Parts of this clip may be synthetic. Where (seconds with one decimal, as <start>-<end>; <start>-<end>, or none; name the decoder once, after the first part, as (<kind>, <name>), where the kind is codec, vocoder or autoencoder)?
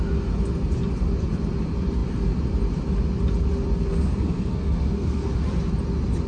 3.9-5.3 (codec, SNAC)